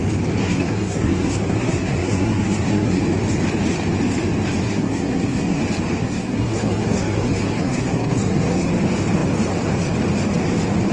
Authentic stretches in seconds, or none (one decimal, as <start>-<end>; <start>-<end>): 0.0-0.4; 3.0-4.6; 5.6-6.0; 8.7-10.9